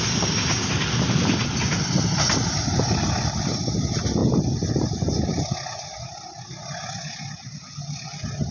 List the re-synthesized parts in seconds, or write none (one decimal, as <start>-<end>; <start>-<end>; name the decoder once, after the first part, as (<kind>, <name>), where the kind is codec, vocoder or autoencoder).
none